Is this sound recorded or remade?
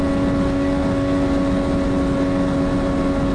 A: recorded